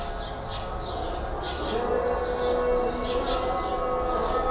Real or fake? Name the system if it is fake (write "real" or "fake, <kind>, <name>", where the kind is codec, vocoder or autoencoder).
real